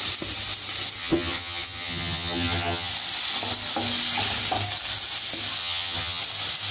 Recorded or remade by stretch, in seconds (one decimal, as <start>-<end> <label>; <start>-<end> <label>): 0.0-1.0 recorded; 1.0-2.9 remade; 2.9-5.6 recorded; 5.6-6.2 remade; 6.2-6.7 recorded